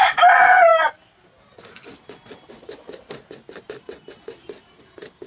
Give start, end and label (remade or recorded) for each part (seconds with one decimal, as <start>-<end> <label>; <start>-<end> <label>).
0.0-5.3 recorded